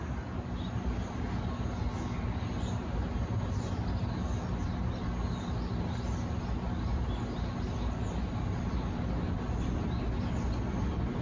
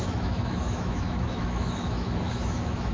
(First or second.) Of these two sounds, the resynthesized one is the second